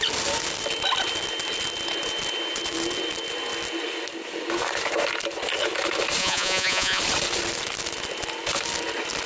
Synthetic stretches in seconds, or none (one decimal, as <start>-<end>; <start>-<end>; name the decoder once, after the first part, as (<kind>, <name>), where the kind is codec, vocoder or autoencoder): 6.2-7.0 (vocoder, Vocos)